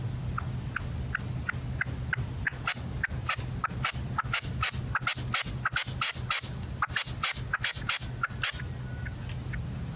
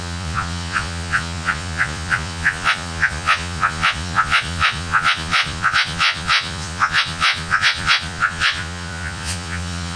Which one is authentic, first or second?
first